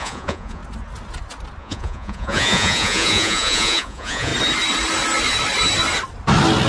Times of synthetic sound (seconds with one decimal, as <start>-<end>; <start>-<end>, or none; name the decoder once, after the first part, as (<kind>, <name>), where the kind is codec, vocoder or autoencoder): 0.0-0.6 (vocoder, Vocos); 1.6-4.3